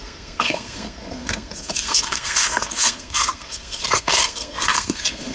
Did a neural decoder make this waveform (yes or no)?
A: yes